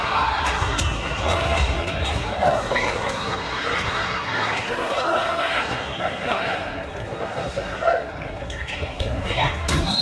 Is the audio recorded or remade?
remade